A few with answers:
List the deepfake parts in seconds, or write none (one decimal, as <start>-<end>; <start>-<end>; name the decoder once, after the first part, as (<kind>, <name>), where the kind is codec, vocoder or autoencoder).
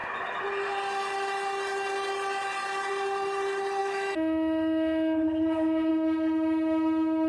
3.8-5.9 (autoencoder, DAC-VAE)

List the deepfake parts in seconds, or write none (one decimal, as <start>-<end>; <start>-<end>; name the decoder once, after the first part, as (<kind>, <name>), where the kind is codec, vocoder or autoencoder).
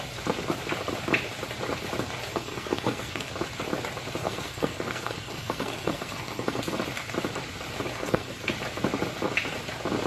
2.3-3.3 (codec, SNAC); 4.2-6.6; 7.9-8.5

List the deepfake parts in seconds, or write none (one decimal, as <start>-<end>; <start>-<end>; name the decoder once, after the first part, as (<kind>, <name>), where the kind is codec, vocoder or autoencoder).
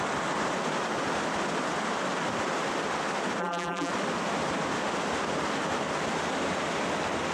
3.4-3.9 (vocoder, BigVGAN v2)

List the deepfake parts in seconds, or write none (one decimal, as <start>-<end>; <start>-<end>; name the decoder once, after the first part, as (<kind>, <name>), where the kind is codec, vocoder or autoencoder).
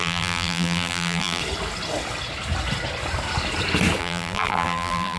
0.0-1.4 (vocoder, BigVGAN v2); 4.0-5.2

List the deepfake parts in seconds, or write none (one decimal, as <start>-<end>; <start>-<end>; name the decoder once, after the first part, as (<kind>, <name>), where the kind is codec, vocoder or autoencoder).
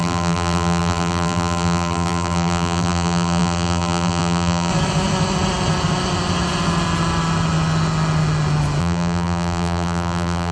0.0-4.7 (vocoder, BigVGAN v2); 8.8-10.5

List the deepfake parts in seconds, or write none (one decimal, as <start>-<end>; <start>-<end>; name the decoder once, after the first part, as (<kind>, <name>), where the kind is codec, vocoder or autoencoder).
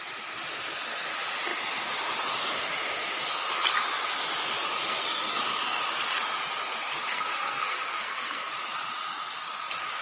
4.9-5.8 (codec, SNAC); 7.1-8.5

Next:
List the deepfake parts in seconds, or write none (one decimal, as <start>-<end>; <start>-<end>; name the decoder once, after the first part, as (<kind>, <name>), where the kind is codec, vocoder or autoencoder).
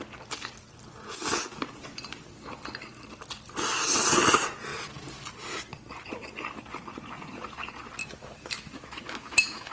8.0-9.7 (autoencoder, DAC-VAE)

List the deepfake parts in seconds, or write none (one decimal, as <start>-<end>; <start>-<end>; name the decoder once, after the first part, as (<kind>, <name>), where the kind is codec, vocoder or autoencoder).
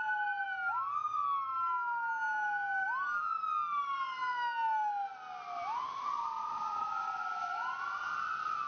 none